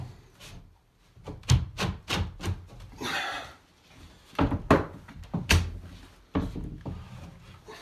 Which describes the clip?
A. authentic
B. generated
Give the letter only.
A